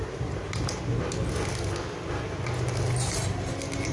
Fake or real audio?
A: real